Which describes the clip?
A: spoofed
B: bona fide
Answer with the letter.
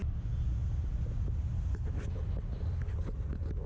B